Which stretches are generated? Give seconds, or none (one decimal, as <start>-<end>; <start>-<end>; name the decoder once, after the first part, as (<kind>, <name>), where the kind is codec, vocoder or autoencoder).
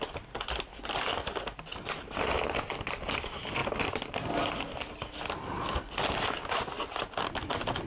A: none